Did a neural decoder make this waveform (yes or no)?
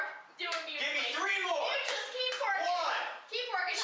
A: yes